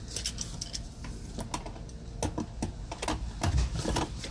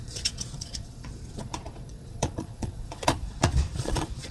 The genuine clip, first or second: first